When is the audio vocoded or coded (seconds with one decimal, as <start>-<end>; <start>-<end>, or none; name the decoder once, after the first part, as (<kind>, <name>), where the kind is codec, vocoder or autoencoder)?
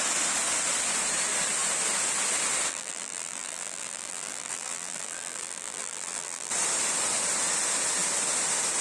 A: 2.7-6.5 (vocoder, BigVGAN v2)